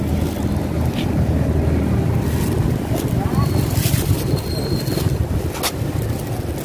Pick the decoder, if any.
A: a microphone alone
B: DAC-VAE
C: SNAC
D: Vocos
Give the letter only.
A